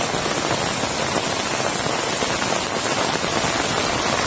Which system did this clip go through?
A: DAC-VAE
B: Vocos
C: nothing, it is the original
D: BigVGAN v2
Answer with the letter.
C